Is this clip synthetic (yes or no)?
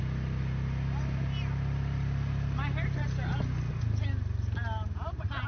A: no